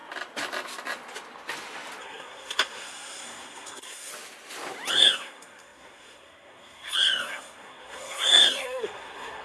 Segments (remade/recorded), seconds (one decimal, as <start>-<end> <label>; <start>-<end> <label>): 0.0-2.0 recorded; 2.0-4.1 remade; 4.1-4.9 recorded; 4.9-9.4 remade